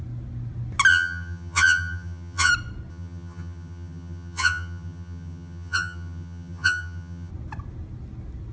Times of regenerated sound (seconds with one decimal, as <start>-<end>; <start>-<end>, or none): 0.9-2.5; 2.9-7.3